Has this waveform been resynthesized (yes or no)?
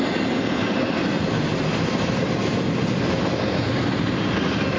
no